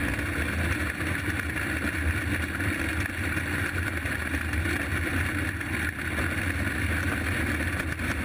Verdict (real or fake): real